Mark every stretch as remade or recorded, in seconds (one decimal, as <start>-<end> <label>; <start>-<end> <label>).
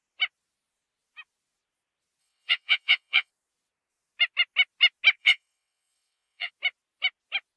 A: 0.0-2.2 recorded; 2.2-3.3 remade; 3.3-5.2 recorded; 5.2-6.5 remade; 6.5-7.6 recorded